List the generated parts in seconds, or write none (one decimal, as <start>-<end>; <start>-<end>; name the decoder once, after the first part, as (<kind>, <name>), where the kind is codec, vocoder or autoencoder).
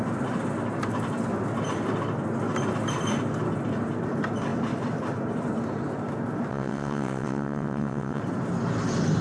6.5-8.2 (vocoder, WaveNeXt)